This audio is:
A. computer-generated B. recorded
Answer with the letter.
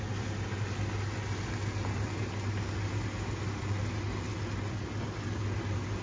B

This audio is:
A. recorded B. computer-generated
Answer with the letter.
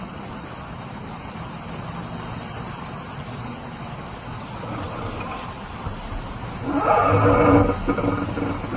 A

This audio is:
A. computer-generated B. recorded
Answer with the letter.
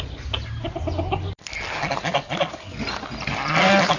B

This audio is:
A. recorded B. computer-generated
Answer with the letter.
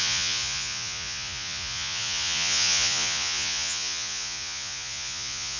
B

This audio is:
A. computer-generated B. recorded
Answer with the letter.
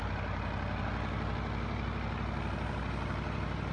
B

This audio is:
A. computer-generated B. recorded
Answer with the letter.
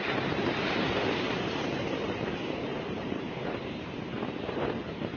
A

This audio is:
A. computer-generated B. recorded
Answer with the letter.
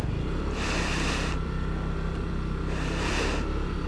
A